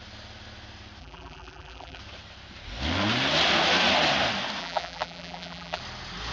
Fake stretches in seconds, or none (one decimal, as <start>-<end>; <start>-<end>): 1.0-2.0; 4.6-5.8

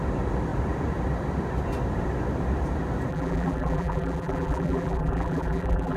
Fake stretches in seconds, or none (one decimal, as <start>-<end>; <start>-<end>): 3.1-6.0

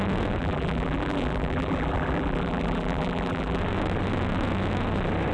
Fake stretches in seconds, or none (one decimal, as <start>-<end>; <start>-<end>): 0.4-3.6

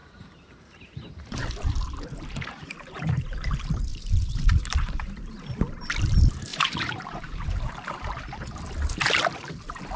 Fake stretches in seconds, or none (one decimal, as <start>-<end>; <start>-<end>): 0.0-3.1; 3.9-5.5; 6.5-8.0

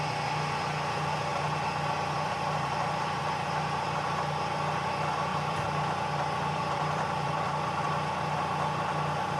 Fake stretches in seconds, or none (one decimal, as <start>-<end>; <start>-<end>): 1.3-3.2; 5.3-7.5